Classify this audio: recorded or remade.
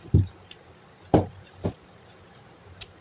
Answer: remade